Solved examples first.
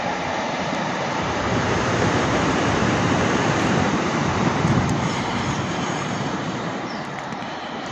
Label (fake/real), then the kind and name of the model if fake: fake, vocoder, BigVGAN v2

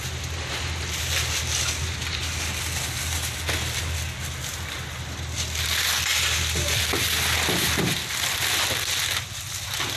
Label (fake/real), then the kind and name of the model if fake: real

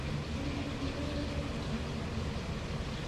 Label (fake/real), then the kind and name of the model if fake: real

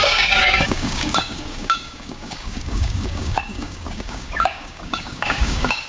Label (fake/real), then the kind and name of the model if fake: fake, codec, DAC